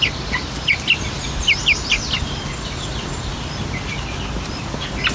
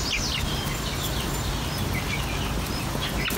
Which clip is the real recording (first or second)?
second